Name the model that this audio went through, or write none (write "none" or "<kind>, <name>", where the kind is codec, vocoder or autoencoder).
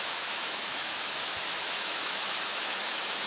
autoencoder, DAC-VAE